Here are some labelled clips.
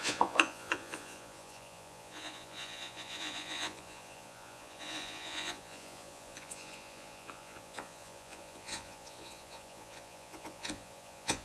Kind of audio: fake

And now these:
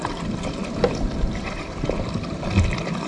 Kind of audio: fake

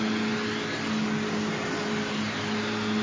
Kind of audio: real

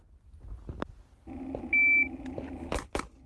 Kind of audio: real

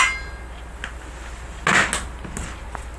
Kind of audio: real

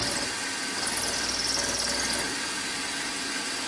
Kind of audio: real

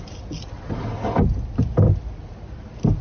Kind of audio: real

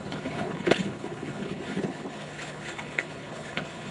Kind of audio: fake